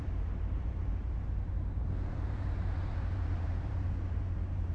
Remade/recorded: remade